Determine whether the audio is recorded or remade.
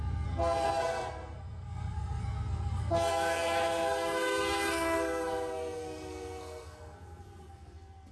remade